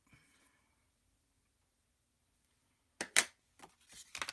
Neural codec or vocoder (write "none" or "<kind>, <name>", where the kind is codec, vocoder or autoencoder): none